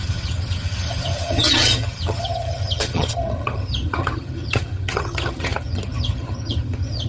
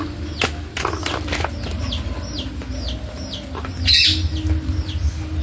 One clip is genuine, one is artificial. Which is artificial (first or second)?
first